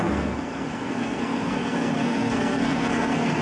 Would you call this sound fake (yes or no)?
yes